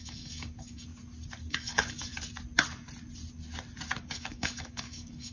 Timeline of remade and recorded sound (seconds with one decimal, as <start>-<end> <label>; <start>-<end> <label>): 0.0-0.9 remade; 0.9-1.5 recorded; 1.5-2.1 remade; 2.1-4.0 recorded; 4.0-5.3 remade